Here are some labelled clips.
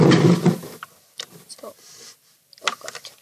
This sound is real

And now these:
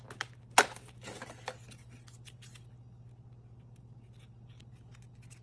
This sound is real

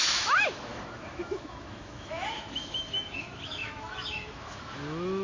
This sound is fake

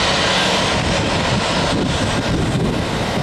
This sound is real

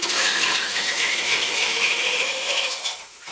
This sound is fake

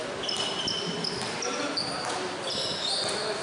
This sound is real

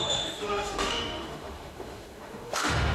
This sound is fake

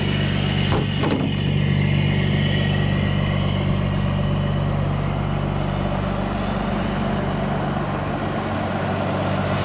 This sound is real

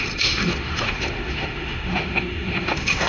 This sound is fake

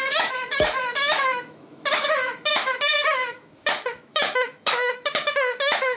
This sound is fake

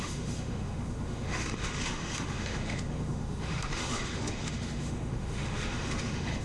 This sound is fake